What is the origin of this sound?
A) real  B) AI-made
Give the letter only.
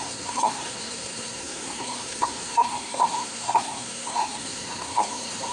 B